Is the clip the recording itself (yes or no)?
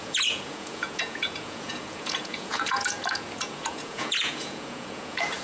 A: no